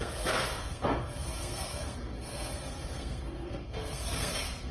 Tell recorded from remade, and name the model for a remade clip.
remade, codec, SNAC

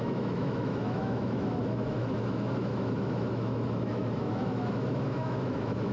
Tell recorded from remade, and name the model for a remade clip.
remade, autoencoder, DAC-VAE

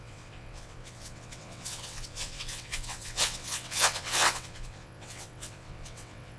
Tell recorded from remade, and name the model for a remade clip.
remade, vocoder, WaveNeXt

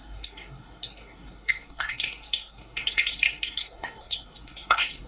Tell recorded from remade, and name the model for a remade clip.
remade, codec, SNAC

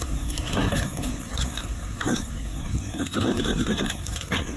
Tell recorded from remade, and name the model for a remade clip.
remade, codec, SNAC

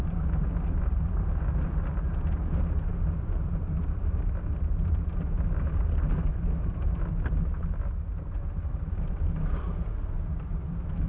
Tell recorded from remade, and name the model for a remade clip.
recorded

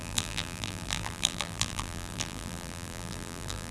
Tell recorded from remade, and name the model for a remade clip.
remade, vocoder, BigVGAN v2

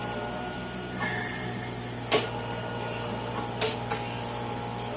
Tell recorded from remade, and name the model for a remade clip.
recorded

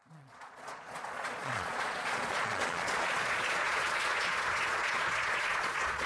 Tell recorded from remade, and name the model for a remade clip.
remade, vocoder, Vocos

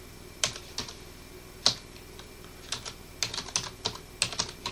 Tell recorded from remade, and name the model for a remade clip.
recorded